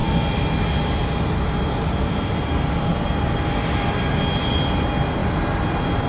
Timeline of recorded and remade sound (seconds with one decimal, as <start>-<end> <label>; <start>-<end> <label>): 0.0-6.1 recorded